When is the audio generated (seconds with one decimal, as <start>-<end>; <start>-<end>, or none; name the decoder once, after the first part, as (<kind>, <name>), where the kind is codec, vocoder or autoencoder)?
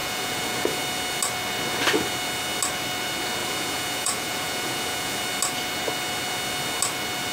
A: 0.0-0.8 (vocoder, Vocos); 3.4-5.2